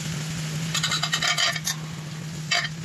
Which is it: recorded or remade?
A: recorded